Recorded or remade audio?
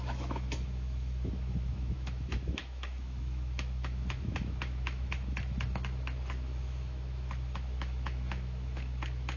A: remade